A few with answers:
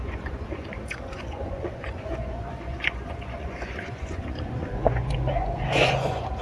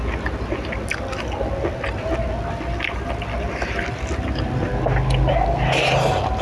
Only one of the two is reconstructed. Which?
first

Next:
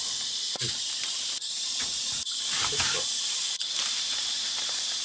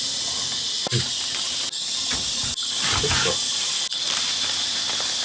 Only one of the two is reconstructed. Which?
first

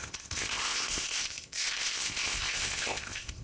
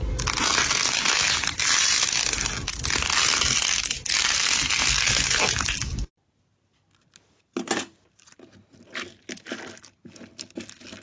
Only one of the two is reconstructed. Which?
first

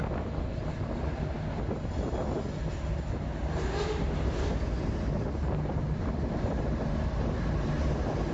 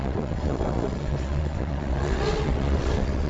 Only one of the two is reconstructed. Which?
second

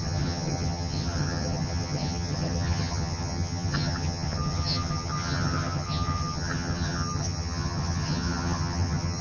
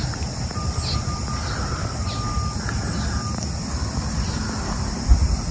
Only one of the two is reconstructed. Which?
first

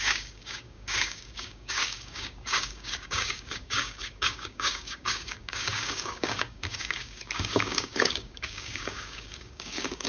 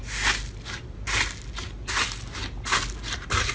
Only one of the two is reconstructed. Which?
first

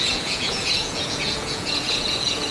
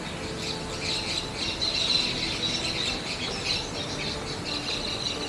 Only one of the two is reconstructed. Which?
first